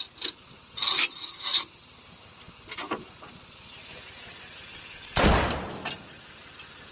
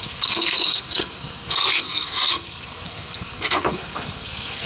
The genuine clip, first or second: first